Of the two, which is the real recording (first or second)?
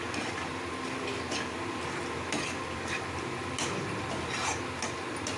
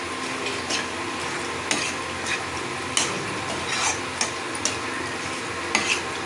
second